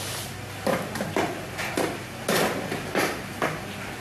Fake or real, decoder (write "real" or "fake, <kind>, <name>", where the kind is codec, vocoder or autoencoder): real